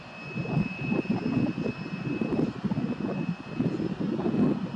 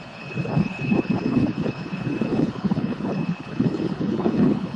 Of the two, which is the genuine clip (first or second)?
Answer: first